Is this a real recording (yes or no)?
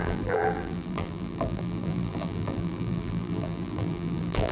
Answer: no